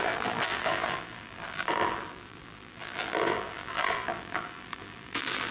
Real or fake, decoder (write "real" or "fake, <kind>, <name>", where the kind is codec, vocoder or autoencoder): fake, vocoder, BigVGAN v2